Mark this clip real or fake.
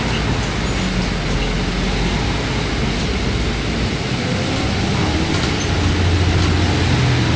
real